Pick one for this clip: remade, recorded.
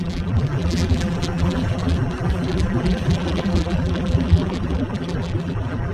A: remade